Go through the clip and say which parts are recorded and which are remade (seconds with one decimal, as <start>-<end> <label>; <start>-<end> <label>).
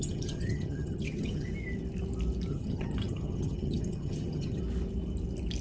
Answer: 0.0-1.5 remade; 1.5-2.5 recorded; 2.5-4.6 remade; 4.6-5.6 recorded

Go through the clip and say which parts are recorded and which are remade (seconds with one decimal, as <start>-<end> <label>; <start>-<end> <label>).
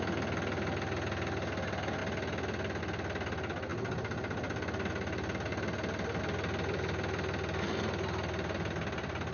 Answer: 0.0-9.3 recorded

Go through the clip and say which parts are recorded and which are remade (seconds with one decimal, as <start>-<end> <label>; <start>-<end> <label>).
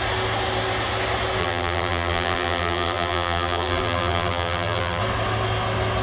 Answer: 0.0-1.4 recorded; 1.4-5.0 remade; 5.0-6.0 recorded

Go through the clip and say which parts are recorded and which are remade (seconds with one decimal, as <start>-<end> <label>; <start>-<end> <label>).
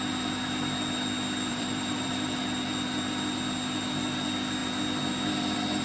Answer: 0.0-1.5 recorded; 1.5-2.4 remade; 2.4-5.8 recorded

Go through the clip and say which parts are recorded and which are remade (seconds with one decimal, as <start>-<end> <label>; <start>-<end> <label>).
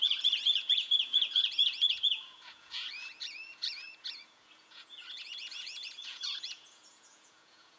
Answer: 0.0-7.8 remade